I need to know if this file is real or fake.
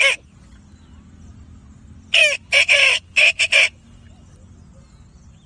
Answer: real